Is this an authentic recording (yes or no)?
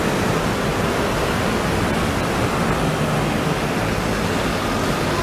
yes